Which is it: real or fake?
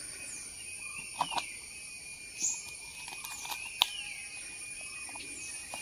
real